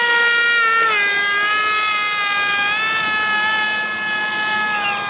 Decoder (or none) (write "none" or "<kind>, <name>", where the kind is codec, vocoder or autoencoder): none